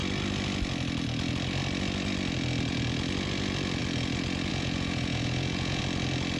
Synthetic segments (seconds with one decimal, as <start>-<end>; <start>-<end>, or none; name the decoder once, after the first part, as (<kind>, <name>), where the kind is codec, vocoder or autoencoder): 4.5-5.8 (vocoder, Vocos)